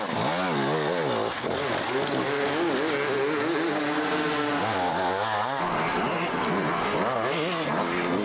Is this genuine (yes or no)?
yes